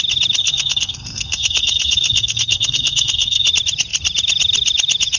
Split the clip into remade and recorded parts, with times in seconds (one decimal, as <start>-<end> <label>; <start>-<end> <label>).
0.0-0.4 recorded; 0.4-3.5 remade; 3.5-5.2 recorded